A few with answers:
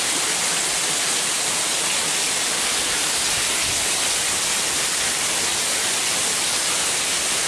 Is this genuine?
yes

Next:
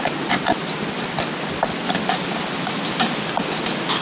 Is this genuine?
yes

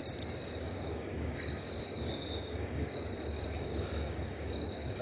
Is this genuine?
no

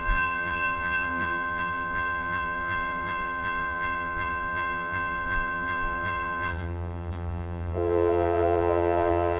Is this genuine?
no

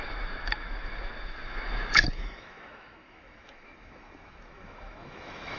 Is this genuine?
no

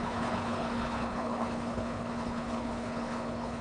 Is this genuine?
no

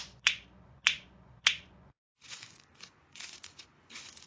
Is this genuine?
no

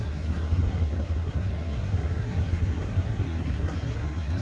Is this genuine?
no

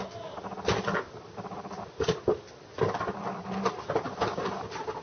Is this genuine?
yes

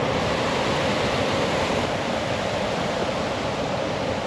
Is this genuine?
no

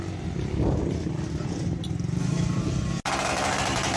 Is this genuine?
yes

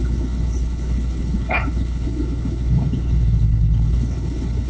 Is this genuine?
no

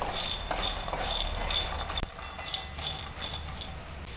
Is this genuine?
yes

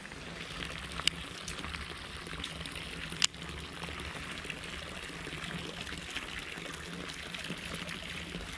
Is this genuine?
yes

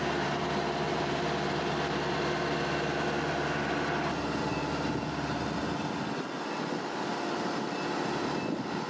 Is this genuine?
yes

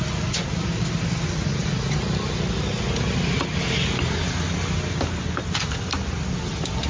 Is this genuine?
yes